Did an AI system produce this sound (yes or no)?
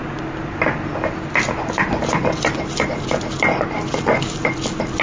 no